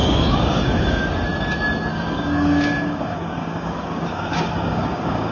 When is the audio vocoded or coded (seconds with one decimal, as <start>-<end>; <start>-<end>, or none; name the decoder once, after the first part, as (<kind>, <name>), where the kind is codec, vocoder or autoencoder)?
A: 0.0-1.0 (codec, DAC); 1.9-5.3